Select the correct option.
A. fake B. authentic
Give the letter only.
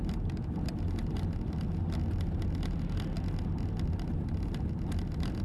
B